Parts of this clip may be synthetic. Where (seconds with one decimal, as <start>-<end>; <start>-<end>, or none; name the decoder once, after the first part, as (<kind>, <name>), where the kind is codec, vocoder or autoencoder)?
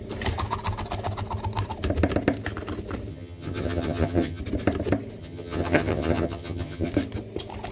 3.1-4.4 (vocoder, HiFi-GAN); 5.2-6.9